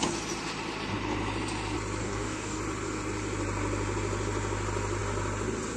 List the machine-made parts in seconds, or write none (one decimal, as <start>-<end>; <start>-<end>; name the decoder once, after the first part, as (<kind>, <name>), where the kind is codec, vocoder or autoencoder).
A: 2.0-2.6 (codec, DAC)